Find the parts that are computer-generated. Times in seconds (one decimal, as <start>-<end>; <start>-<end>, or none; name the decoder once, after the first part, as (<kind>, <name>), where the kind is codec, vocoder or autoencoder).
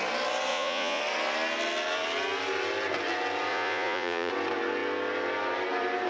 0.5-1.0 (vocoder, Vocos); 3.5-4.3